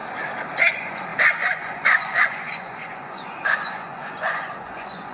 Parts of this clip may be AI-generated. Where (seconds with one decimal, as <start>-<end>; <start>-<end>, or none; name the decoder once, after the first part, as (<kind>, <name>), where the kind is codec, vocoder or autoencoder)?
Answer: 0.7-5.1 (vocoder, Vocos)